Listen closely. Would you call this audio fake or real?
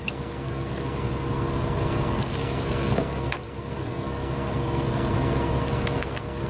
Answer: fake